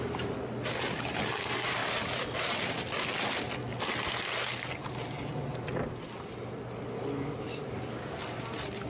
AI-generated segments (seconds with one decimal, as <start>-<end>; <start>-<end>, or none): none